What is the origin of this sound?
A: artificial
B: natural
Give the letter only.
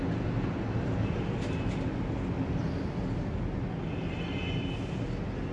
B